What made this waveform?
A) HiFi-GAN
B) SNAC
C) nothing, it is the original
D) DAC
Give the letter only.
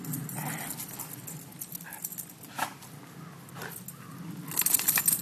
C